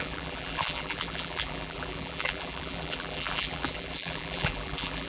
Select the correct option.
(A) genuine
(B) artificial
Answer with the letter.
B